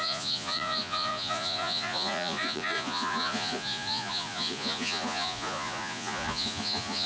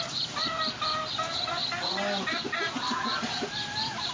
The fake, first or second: first